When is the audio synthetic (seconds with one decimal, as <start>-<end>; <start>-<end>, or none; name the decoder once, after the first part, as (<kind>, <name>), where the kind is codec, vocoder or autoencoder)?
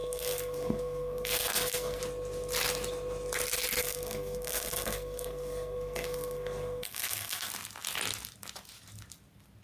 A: 0.0-2.0 (codec, SNAC); 3.8-7.5